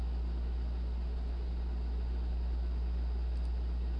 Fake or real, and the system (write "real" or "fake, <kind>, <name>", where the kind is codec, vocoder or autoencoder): real